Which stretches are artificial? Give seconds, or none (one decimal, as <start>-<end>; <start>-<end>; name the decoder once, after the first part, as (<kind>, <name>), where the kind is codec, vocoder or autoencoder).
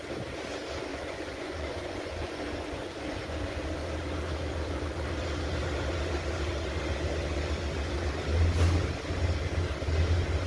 0.9-3.6 (vocoder, Vocos)